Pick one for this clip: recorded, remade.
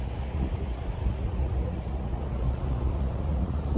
remade